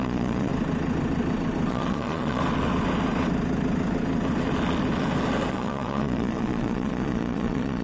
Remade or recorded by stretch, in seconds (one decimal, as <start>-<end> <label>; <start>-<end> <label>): 0.0-0.5 remade; 0.5-1.7 recorded; 1.7-2.4 remade; 2.4-5.5 recorded; 5.5-7.8 remade